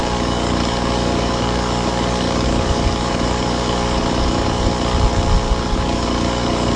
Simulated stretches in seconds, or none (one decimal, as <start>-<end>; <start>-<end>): 0.0-4.7; 5.6-6.8